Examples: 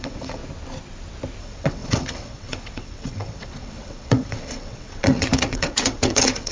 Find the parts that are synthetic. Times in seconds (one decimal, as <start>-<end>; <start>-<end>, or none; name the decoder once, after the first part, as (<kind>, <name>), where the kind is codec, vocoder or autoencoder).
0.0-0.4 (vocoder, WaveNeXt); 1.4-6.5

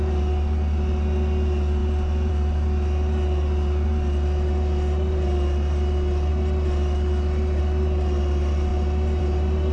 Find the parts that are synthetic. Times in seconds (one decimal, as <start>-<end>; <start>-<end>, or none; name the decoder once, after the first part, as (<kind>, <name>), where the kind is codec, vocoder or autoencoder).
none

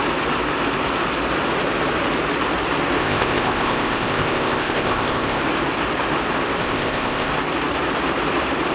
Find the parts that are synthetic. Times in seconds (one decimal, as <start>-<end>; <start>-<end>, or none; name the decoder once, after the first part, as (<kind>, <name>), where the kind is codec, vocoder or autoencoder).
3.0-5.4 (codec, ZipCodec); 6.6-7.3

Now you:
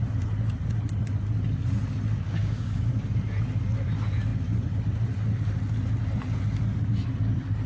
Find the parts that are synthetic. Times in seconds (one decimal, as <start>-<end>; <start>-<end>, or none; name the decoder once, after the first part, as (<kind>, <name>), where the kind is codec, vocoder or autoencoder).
2.4-2.9 (codec, DAC)

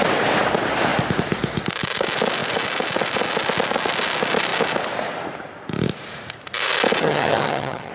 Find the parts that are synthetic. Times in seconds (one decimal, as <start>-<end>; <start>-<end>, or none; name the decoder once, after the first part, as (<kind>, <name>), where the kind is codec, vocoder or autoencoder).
7.0-7.9 (vocoder, HiFi-GAN)

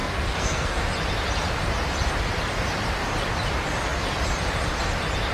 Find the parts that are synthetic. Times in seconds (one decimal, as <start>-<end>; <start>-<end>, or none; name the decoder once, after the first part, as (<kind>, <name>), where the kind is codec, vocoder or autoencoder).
0.0-0.8 (codec, SNAC)

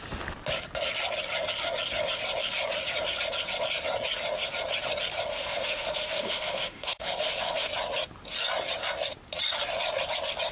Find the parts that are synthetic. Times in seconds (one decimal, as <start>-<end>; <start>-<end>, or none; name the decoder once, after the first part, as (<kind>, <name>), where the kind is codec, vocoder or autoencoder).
5.3-7.7 (autoencoder, DAC-VAE)